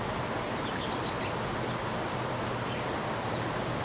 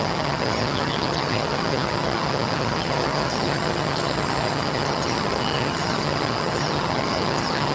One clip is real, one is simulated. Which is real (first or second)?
first